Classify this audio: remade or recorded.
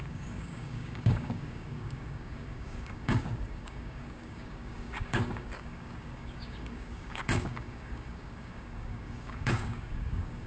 remade